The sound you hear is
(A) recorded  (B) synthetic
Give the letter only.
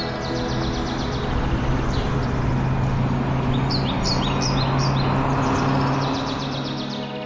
A